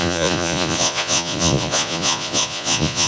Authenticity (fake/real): fake